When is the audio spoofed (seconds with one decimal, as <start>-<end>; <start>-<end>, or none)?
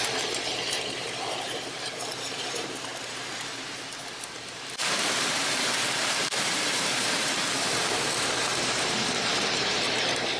0.0-10.4